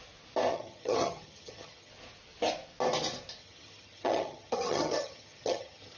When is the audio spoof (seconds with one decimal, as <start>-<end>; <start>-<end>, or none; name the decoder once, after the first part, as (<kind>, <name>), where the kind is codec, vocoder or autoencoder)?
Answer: 0.5-1.9 (vocoder, HiFi-GAN); 3.4-6.0